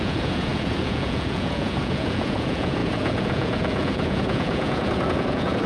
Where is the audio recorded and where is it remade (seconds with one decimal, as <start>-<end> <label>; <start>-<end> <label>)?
0.0-5.7 remade